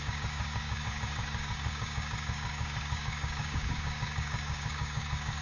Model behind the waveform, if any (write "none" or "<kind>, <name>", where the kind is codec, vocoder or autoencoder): codec, DAC